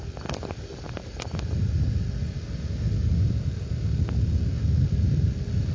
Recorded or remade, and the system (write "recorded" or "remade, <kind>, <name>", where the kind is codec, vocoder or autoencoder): recorded